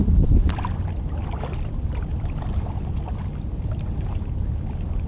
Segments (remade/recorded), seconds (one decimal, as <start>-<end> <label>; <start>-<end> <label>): 0.0-3.1 remade; 3.1-5.1 recorded